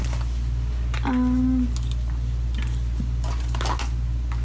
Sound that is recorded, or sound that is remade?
recorded